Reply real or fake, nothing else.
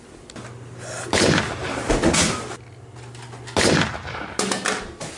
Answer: real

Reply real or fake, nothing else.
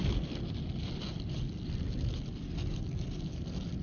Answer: real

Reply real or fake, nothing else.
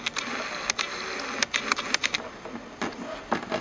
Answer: real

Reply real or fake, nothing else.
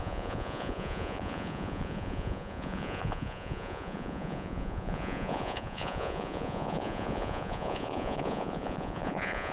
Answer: fake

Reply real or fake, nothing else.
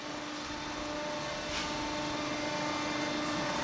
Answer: real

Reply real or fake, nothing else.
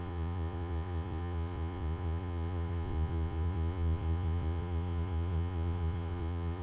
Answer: fake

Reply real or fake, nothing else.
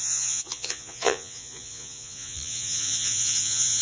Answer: fake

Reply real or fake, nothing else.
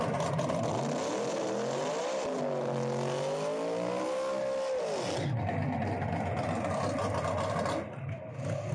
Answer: real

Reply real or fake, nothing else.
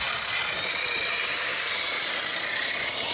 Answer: real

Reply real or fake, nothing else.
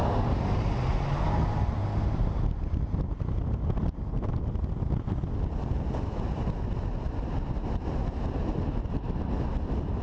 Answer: real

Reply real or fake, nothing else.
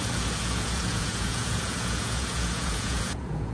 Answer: fake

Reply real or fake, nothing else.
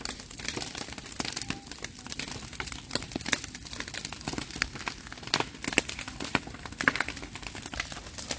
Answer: real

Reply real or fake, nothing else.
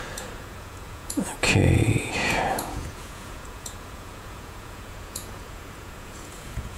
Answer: fake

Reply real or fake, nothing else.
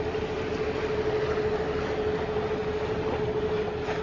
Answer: real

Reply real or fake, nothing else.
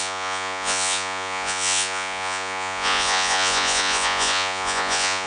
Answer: fake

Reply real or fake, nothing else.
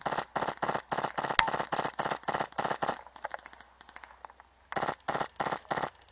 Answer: real